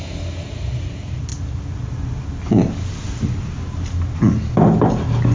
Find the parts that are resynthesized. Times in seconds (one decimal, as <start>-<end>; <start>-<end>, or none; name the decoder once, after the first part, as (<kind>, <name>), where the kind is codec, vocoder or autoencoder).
none